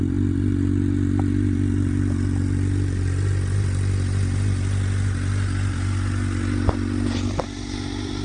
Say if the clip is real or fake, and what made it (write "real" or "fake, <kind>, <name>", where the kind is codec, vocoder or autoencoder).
real